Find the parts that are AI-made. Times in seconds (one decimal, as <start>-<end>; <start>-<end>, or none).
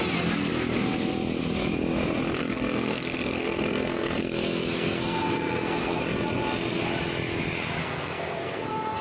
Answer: 2.4-6.0; 7.8-9.0